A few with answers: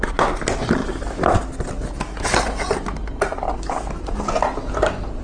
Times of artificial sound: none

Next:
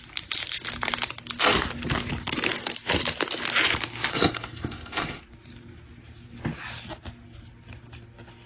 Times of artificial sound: 4.1-5.2 (codec, SNAC)

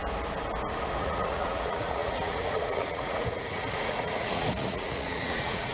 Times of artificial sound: 1.0-5.7 (vocoder, Vocos)

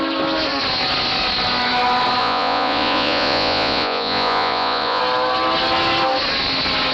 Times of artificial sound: 2.2-5.0 (vocoder, Vocos)

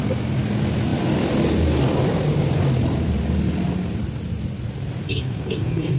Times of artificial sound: 5.1-6.0 (codec, SNAC)